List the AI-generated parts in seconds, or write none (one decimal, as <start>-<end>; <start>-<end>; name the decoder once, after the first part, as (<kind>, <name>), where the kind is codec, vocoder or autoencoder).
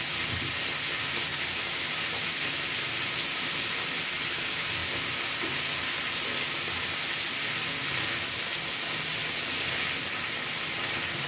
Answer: none